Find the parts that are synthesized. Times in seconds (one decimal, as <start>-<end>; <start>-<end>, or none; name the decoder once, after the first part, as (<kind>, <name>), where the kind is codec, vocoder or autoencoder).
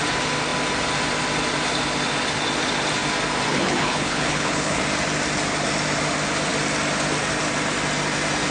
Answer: 3.5-4.8 (codec, HILCodec)